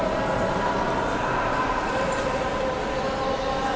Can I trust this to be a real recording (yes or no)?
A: yes